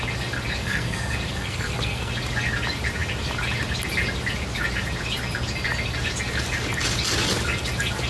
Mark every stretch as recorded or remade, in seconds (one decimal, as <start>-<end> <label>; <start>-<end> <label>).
0.0-0.6 recorded; 0.6-2.1 remade; 2.1-8.1 recorded